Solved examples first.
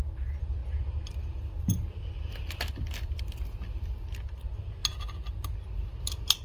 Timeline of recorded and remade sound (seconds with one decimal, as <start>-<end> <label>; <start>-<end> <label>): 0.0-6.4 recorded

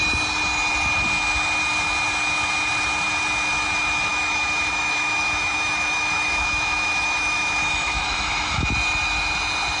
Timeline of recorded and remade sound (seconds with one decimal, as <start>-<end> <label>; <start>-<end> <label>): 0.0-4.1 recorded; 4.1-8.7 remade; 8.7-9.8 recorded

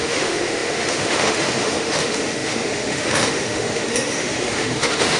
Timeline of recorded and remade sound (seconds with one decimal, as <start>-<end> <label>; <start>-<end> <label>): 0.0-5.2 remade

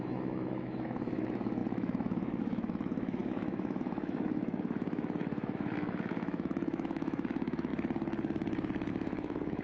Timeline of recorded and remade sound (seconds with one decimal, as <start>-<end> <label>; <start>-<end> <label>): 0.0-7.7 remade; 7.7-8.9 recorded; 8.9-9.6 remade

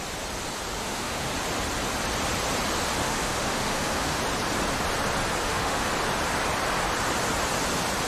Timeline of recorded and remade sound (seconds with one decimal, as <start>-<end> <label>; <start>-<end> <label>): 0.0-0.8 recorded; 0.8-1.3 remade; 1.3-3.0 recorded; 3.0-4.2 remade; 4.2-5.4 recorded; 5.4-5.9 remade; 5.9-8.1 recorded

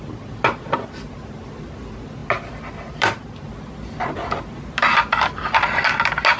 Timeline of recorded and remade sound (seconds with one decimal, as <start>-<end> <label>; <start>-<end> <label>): 0.0-6.4 recorded